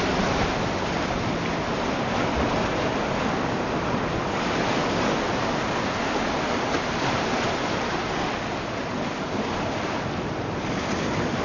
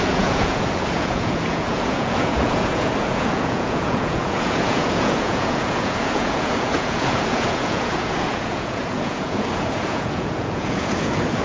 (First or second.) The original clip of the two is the first